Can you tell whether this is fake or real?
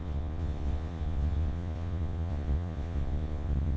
fake